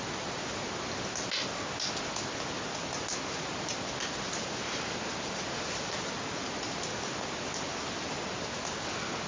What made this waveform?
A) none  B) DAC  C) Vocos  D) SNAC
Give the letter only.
A